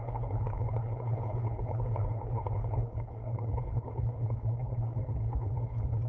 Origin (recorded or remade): remade